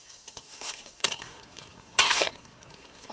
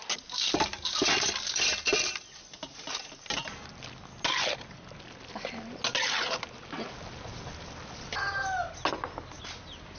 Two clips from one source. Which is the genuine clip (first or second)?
second